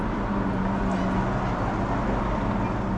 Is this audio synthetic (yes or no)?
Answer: no